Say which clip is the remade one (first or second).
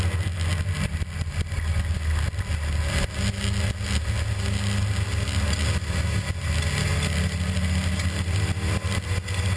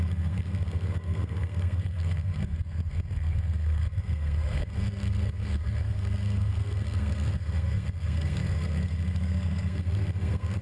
second